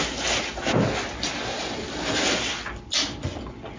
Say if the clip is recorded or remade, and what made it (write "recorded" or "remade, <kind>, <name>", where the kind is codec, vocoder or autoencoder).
recorded